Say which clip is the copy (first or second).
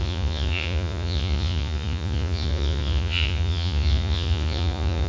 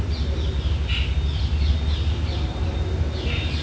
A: first